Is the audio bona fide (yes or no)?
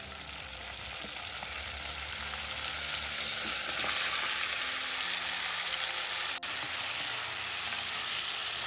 yes